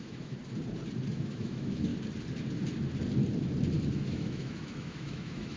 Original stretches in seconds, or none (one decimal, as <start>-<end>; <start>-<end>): 0.4-1.1; 1.9-3.9